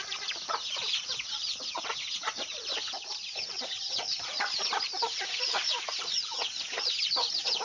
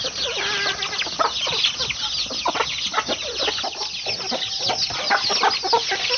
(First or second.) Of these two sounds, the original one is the second